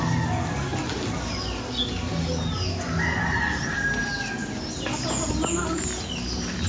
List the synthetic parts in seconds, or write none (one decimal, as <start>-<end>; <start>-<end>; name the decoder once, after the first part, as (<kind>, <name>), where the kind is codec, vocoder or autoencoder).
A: none